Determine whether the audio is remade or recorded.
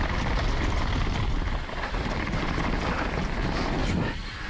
recorded